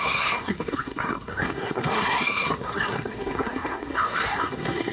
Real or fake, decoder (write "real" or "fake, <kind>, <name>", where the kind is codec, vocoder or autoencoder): fake, codec, SNAC